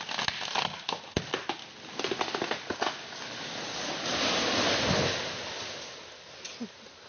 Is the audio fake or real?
real